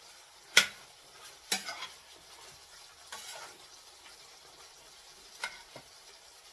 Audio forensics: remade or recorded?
recorded